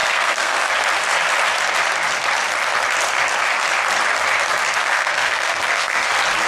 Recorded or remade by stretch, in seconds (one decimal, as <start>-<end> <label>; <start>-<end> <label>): 0.0-0.7 remade; 0.7-4.8 recorded; 4.8-6.1 remade; 6.1-6.5 recorded